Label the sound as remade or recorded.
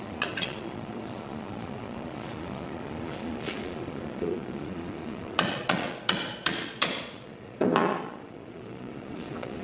remade